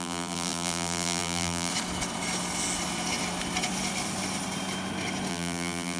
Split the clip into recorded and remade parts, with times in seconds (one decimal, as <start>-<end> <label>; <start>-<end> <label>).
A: 0.0-1.7 remade; 1.7-5.3 recorded; 5.3-6.0 remade